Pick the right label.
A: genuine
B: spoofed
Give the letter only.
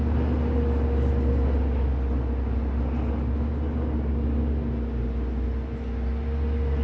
A